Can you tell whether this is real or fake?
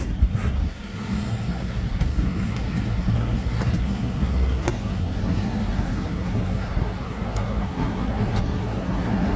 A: fake